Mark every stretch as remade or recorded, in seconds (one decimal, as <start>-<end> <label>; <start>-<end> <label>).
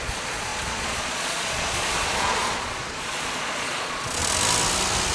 0.0-4.2 remade; 4.2-5.1 recorded